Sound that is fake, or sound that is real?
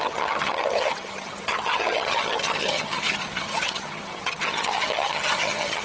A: fake